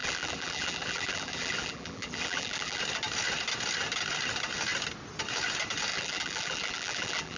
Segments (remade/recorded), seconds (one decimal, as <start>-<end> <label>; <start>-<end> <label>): 0.0-2.8 remade; 2.8-5.9 recorded; 5.9-7.4 remade